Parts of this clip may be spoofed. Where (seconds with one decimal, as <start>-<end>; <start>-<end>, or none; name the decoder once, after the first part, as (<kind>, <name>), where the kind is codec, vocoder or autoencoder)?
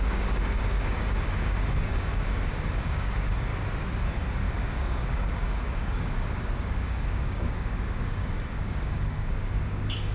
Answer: 0.0-3.5 (codec, DAC); 4.0-10.1